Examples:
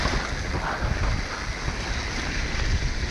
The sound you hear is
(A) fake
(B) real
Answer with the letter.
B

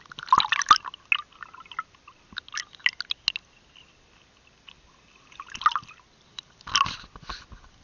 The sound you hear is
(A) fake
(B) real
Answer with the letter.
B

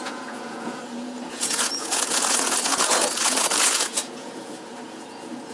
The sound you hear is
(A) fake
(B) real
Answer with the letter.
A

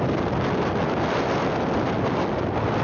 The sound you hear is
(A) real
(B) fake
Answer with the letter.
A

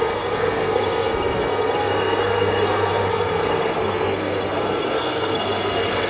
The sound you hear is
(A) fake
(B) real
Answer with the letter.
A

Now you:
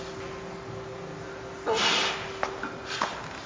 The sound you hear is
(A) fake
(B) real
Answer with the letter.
B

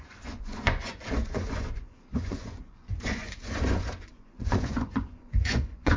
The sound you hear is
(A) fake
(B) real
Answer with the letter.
A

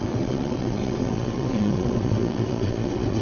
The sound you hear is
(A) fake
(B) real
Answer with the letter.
A